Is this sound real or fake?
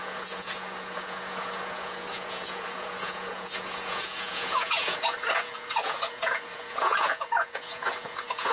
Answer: fake